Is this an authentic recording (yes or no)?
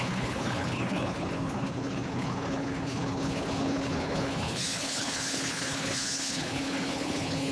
no